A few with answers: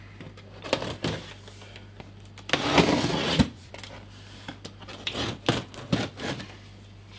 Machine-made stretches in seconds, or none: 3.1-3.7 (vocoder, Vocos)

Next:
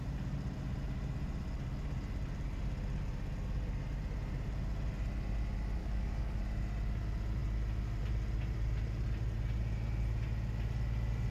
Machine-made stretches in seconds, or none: 5.8-6.4 (codec, DAC)